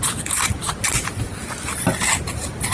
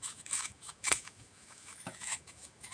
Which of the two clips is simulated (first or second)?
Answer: second